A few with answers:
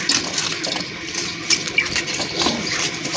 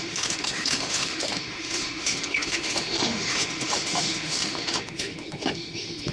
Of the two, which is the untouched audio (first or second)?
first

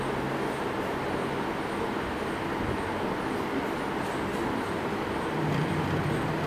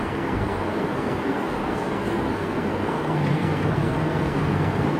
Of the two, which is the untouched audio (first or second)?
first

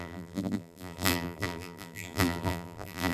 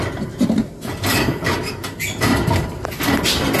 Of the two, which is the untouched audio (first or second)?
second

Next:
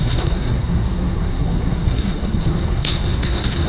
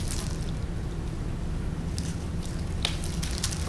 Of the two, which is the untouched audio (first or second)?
second